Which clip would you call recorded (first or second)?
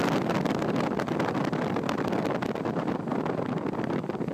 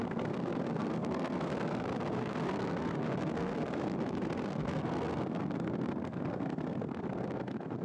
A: first